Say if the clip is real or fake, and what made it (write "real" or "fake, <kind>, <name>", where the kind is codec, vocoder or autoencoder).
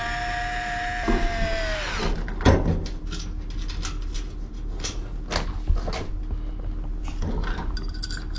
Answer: real